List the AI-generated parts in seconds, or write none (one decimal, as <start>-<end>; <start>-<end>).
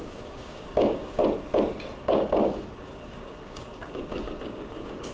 0.0-1.2; 2.0-5.1